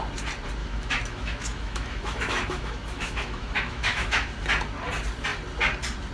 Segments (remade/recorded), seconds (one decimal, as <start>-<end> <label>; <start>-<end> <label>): 0.0-0.6 recorded; 0.6-4.3 remade; 4.3-6.1 recorded